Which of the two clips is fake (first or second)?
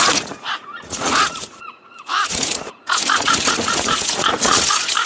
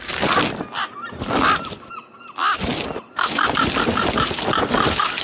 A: first